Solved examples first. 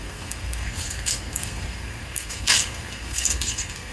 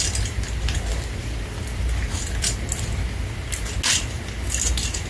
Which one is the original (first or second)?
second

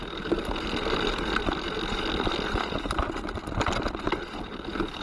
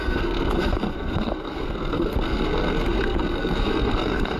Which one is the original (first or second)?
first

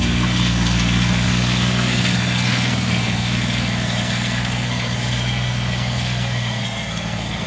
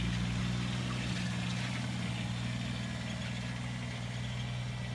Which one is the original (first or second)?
second